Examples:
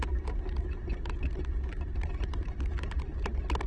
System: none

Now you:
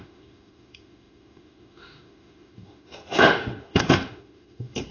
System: autoencoder, DAC-VAE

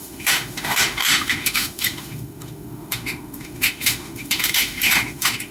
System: autoencoder, DAC-VAE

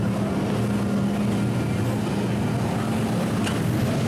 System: none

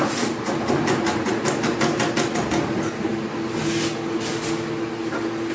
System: none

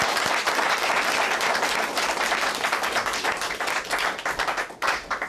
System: none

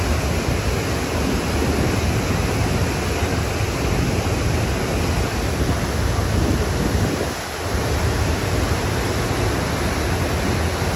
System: none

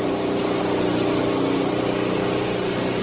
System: none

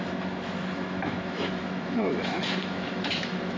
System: autoencoder, DAC-VAE